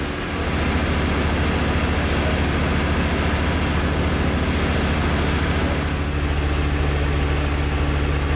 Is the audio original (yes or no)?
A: yes